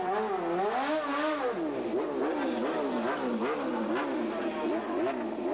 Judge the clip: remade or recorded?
recorded